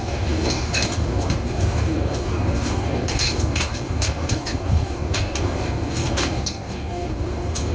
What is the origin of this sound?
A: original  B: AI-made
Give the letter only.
B